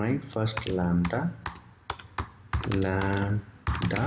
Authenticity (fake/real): real